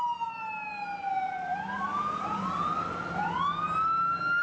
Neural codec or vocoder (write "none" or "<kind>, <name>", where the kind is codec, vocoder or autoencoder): none